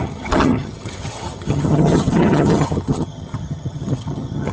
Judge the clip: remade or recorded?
remade